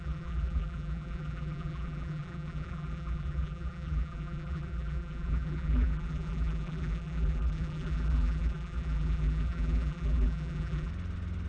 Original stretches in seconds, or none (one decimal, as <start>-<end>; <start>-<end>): 10.9-11.5